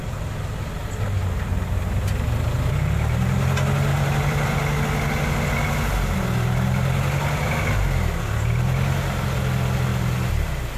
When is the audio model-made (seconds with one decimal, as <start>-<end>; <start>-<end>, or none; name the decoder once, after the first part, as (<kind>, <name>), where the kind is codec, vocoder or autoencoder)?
3.9-4.5 (vocoder, BigVGAN v2)